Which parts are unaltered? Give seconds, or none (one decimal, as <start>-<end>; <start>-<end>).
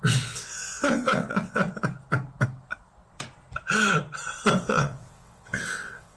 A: 1.6-4.6